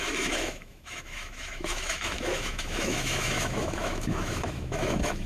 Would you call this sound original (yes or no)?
no